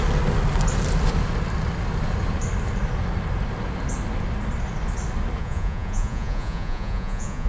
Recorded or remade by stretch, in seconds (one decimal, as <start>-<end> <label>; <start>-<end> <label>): 0.0-5.4 recorded; 5.4-7.5 remade